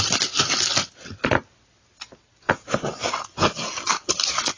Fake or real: real